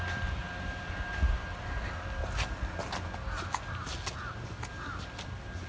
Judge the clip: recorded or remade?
recorded